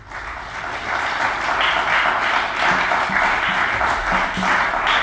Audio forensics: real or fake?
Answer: real